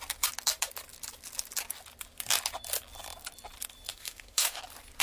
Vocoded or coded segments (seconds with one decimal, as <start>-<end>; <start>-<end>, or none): 3.9-4.6